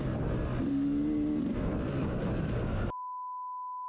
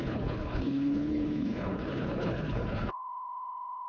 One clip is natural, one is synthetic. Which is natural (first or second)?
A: first